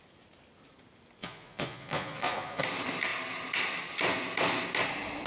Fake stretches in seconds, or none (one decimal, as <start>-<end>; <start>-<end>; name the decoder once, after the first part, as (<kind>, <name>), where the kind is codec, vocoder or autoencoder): 1.2-2.6 (vocoder, Vocos)